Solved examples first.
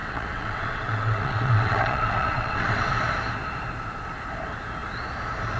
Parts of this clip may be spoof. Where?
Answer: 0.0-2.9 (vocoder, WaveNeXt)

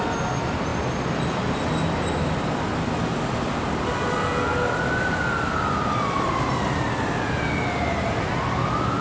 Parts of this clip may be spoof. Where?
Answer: none